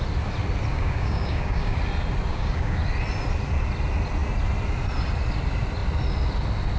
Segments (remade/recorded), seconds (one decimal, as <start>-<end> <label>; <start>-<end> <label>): 0.0-0.7 recorded; 0.7-1.8 remade; 1.8-2.3 recorded; 2.3-2.8 remade; 2.8-6.8 recorded